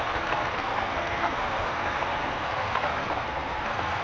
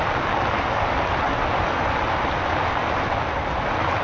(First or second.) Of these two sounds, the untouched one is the second